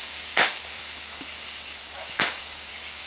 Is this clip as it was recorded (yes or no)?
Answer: no